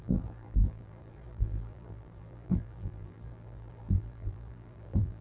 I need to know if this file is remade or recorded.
remade